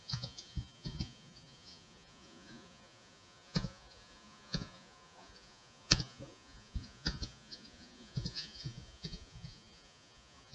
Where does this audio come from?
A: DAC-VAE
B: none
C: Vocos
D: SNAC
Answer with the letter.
C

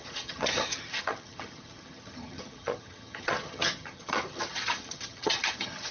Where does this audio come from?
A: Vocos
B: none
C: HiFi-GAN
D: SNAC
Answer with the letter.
C